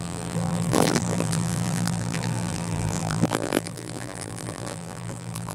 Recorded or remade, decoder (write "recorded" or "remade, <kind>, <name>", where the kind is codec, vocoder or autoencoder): remade, vocoder, BigVGAN v2